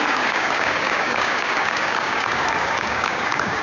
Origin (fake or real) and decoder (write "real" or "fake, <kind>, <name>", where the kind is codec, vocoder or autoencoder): fake, codec, DAC